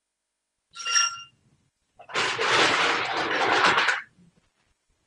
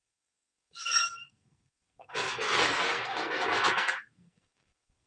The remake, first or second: second